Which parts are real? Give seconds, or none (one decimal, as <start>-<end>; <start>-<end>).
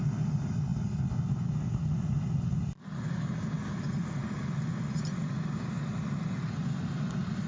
0.0-7.5